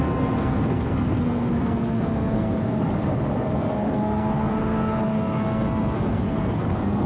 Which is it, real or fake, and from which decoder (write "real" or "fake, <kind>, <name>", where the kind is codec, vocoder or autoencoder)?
fake, codec, SNAC